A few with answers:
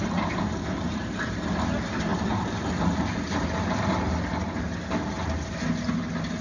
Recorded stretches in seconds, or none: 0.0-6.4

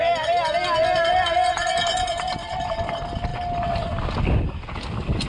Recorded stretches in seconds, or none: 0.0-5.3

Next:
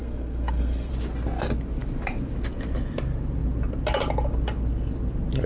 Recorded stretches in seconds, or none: 0.9-5.5

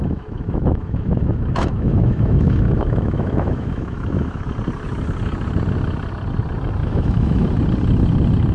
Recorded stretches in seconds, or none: 4.5-6.8; 7.5-8.5